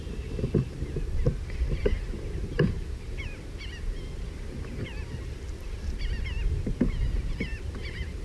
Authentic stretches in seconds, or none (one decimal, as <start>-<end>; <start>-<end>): 4.9-7.2